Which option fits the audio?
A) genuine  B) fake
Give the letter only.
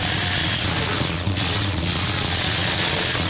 B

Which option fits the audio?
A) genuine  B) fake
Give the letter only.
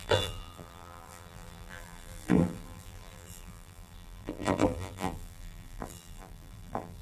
B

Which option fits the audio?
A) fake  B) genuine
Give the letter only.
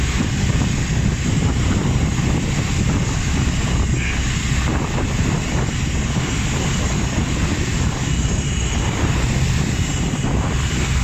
B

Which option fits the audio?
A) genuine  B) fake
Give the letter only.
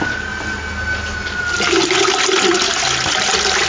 A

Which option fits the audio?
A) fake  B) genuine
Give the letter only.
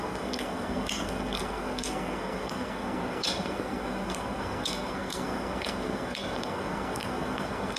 A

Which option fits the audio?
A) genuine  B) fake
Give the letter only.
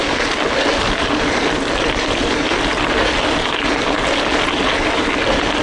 A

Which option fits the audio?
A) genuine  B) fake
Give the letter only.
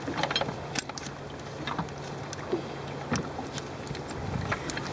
A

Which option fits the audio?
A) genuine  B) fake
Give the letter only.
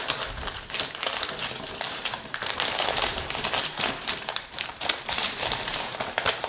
B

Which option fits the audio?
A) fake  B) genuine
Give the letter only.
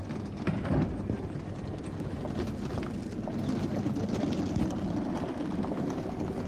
B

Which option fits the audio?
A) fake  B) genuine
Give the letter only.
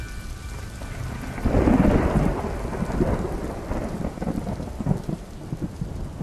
B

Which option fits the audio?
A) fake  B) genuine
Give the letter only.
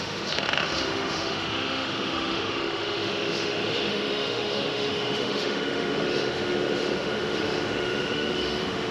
A